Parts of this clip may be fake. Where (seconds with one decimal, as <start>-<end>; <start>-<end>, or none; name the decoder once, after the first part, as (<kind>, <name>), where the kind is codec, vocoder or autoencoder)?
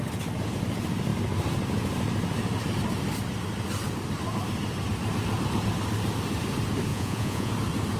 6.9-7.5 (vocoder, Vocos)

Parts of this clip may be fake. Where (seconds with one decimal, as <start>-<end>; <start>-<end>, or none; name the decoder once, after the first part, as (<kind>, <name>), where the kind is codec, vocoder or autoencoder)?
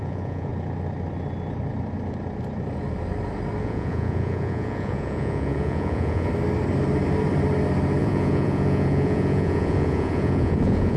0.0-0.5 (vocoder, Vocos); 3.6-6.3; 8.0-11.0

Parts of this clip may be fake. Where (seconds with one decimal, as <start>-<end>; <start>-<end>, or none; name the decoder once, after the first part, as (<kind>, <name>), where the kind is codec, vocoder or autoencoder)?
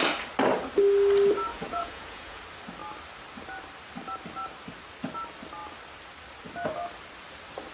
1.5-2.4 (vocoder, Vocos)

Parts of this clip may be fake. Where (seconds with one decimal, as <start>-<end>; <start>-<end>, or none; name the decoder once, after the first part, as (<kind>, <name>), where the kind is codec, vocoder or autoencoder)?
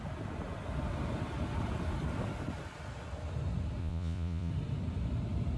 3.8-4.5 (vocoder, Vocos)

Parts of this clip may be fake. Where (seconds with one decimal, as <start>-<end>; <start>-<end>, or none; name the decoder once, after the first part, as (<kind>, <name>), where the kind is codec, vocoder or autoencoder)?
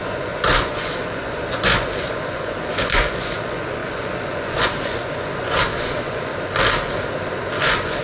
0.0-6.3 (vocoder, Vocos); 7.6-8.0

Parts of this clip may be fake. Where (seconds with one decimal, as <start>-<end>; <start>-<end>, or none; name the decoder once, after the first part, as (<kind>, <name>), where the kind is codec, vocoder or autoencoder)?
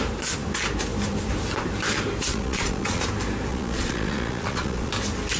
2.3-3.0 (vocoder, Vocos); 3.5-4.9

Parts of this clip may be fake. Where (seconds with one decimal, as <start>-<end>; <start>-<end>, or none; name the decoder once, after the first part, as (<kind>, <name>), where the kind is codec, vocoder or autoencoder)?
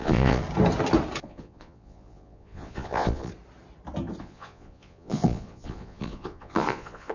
0.0-0.4 (vocoder, Vocos); 1.2-3.3; 4.2-7.1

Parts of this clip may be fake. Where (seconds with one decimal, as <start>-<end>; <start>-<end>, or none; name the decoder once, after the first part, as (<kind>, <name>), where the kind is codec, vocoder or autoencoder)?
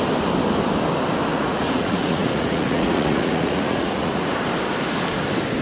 1.3-4.3 (vocoder, Vocos)